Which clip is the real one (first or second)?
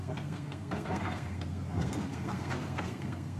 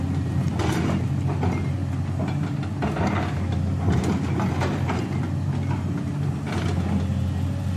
second